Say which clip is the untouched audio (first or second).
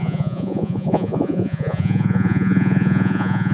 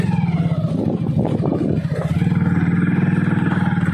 second